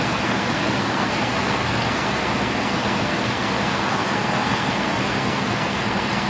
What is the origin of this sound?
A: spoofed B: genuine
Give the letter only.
A